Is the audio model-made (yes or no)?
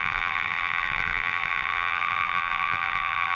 yes